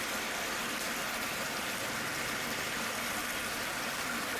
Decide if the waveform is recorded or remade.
remade